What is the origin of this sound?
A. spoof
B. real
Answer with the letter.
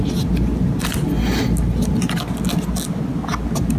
B